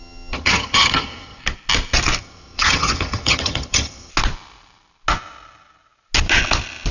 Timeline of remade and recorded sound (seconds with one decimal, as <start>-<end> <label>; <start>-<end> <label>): 0.0-1.4 remade; 1.4-2.2 recorded; 2.2-4.1 remade; 4.1-6.9 recorded